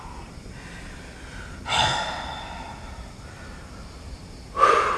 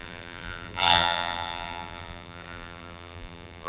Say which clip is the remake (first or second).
second